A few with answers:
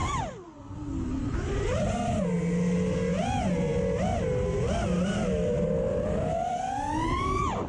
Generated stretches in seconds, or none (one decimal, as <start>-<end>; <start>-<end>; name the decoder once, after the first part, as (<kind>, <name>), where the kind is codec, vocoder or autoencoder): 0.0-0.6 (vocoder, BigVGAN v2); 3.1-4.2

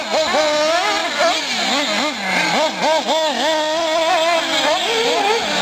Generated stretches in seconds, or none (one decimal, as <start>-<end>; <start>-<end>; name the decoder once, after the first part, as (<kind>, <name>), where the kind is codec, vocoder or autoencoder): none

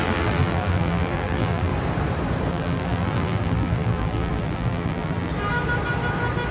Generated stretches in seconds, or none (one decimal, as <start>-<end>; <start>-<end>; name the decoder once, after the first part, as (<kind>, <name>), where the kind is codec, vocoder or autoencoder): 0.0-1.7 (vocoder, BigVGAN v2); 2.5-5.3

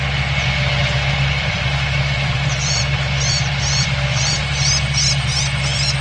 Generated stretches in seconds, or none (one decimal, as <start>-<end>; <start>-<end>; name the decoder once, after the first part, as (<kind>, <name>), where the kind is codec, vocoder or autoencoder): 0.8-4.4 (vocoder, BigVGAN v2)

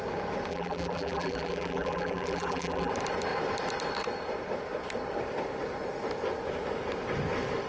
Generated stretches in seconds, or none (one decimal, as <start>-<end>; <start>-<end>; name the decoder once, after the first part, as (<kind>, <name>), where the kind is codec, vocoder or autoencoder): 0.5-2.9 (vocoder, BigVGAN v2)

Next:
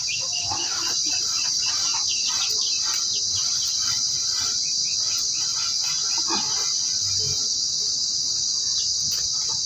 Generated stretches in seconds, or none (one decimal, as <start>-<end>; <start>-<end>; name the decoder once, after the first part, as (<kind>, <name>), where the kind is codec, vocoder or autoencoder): 0.0-4.9 (vocoder, BigVGAN v2)

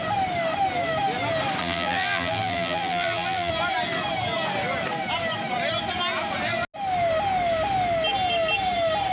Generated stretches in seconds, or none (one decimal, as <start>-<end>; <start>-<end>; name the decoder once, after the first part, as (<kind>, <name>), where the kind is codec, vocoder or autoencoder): 1.6-3.5 (vocoder, BigVGAN v2)

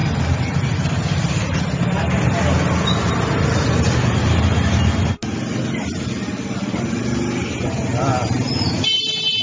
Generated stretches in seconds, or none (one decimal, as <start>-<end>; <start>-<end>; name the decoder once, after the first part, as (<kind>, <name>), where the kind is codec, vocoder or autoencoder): 0.0-1.8 (vocoder, BigVGAN v2); 5.3-7.0; 8.1-8.8